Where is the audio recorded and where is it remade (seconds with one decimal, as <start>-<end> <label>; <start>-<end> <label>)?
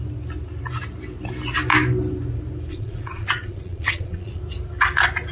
0.0-2.7 recorded; 2.7-4.4 remade; 4.4-5.3 recorded